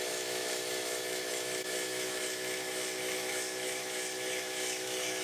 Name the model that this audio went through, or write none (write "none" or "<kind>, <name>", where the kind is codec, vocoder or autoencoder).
autoencoder, DAC-VAE